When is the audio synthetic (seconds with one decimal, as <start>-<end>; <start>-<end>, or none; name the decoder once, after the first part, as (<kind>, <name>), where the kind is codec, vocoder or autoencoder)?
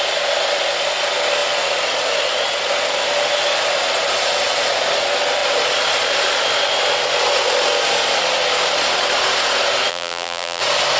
9.9-10.6 (vocoder, BigVGAN v2)